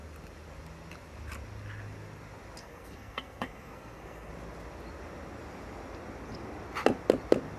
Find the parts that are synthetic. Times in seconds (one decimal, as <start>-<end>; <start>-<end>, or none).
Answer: 2.6-4.3